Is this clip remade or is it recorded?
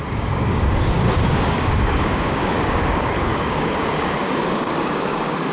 remade